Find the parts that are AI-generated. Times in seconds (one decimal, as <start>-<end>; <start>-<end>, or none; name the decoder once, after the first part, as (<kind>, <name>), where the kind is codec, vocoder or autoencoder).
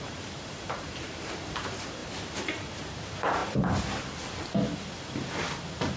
0.0-3.4 (vocoder, BigVGAN v2); 5.6-6.0